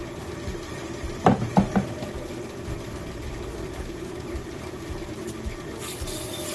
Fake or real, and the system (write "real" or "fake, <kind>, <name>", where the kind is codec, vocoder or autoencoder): fake, vocoder, BigVGAN v2